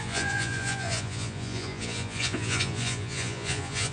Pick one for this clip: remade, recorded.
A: remade